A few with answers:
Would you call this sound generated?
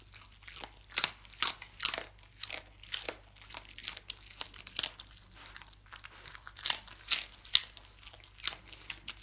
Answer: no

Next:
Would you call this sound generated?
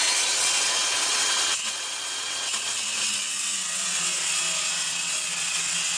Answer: yes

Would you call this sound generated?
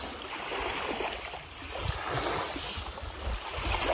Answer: no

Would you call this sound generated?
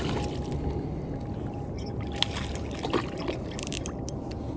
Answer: no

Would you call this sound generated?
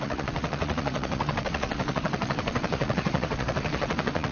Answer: yes